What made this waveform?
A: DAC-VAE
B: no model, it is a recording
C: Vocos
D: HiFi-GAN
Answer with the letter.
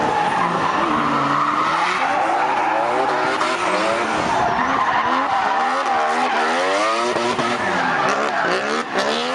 B